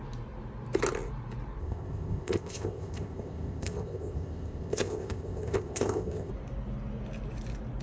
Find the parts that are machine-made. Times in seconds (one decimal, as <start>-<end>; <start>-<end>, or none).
1.6-6.3

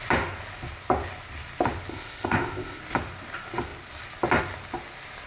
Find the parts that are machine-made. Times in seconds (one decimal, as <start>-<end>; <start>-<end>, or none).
1.9-2.8

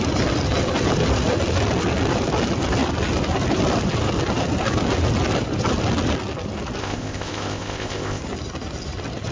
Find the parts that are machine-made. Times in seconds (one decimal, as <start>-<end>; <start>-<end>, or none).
6.8-8.2

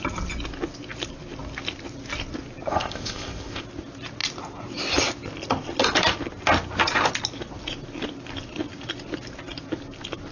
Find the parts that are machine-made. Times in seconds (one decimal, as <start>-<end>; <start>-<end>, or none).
2.7-3.6

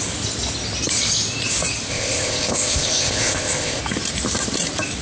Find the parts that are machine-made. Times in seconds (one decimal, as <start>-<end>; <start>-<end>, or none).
1.9-3.8